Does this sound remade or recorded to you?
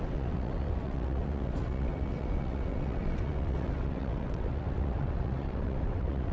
remade